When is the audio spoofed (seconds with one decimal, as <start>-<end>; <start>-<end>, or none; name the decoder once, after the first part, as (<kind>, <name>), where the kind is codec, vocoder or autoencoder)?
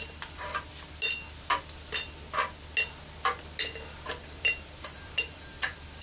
0.0-0.7 (vocoder, BigVGAN v2); 4.2-6.0